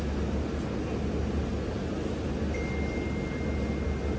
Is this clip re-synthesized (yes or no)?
no